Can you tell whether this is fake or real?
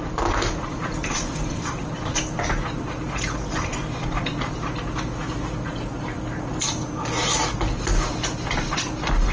real